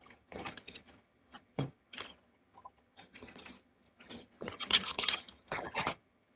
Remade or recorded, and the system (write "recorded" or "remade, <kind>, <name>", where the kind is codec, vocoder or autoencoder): remade, vocoder, HiFi-GAN